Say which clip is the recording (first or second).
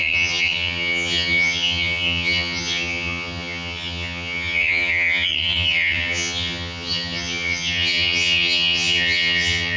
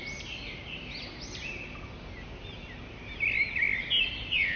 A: second